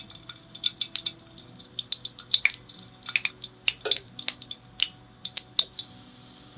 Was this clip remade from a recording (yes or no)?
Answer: no